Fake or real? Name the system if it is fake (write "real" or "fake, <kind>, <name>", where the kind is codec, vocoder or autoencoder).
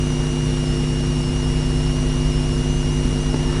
real